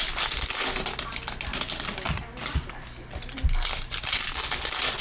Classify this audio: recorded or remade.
recorded